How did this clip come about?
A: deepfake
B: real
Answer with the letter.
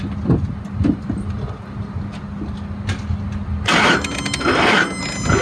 B